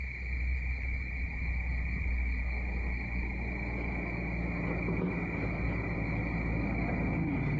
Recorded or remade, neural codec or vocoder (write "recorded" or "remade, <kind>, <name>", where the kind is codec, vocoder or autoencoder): recorded